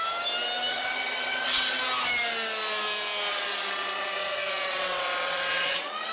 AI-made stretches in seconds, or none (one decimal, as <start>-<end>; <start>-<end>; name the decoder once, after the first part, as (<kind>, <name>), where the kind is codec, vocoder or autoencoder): 0.7-1.8 (vocoder, WaveNeXt); 3.3-6.1